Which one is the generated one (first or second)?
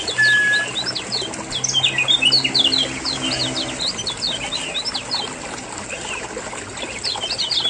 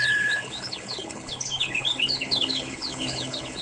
second